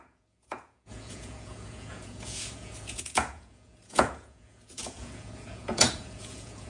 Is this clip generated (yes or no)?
yes